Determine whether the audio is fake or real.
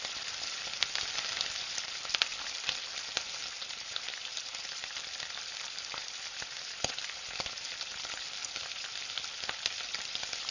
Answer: fake